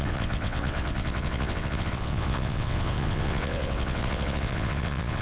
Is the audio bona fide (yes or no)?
no